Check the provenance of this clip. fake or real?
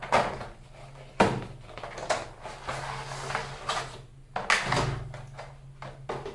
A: real